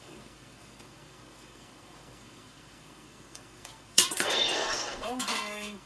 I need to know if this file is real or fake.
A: fake